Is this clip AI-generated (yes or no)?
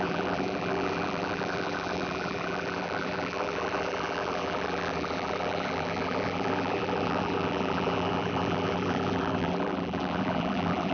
yes